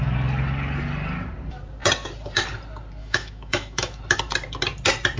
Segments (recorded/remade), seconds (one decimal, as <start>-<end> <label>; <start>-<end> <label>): 0.0-3.0 recorded; 3.0-4.0 remade; 4.0-5.2 recorded